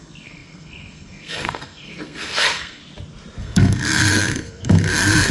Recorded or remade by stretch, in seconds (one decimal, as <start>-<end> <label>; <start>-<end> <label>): 0.0-2.8 remade; 2.8-3.4 recorded; 3.4-5.3 remade